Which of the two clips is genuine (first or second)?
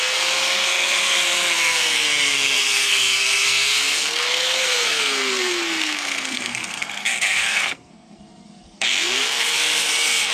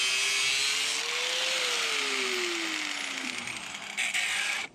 second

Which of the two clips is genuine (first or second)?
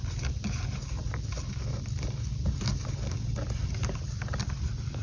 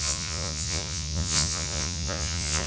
first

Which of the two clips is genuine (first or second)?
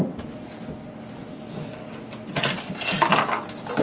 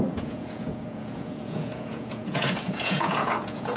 first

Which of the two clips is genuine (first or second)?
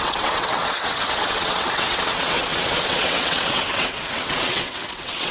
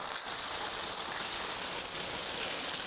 second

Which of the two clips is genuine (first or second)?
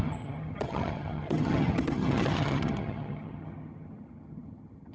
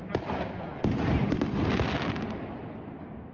second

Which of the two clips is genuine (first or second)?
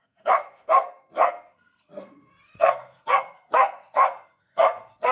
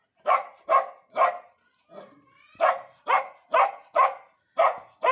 second